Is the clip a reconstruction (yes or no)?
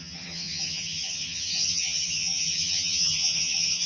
yes